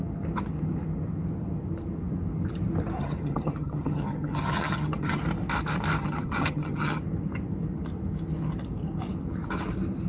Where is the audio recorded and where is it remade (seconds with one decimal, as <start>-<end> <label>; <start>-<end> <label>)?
0.0-3.0 recorded; 3.0-5.2 remade; 5.2-6.0 recorded; 6.0-7.0 remade; 7.0-10.1 recorded